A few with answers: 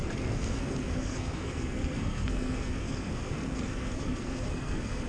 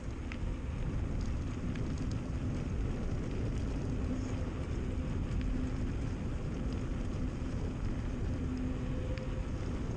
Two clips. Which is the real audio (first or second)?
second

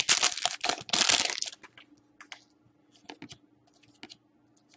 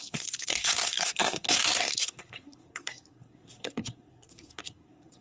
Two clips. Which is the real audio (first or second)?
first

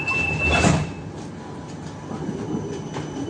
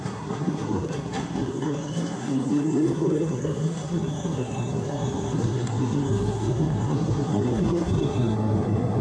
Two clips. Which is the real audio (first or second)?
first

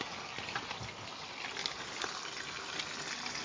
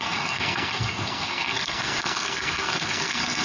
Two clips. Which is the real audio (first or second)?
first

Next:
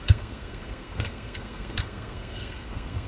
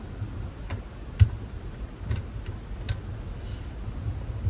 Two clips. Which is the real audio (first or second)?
second